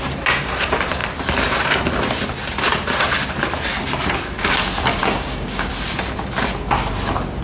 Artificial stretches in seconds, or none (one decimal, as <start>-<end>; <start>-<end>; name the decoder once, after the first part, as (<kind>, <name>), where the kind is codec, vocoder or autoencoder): 5.0-5.7 (codec, DAC)